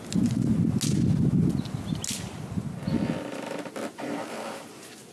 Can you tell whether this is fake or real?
real